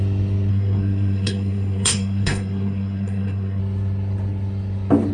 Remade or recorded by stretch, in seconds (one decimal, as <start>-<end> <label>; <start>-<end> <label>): 0.0-0.5 recorded; 0.5-3.6 remade; 3.6-5.1 recorded